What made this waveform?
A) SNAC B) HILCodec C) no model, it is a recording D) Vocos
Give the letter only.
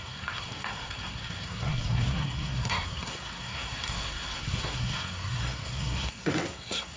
A